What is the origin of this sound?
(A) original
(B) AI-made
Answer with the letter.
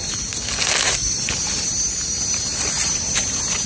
A